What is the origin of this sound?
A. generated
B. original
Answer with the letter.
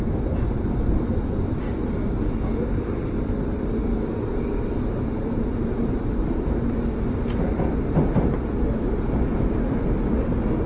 B